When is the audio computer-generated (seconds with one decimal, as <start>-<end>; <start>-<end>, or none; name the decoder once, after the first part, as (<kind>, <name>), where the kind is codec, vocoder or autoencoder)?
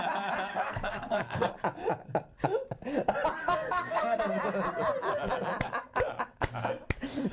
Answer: 0.5-1.5 (codec, SNAC); 3.4-4.2